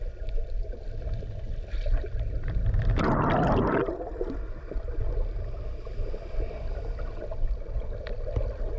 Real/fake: real